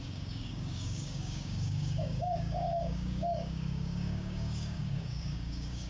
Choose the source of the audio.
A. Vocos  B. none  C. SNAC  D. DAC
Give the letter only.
D